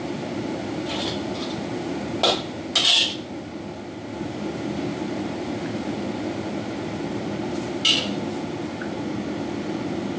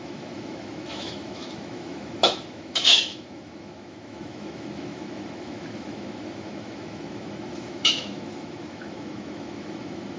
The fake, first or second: second